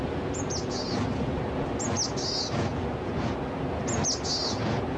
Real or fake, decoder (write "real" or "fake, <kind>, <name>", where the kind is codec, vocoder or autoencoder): real